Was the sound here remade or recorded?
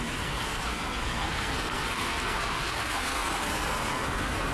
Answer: remade